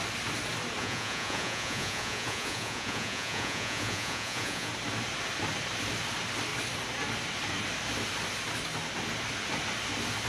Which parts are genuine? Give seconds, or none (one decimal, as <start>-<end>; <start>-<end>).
0.0-0.8; 4.7-10.3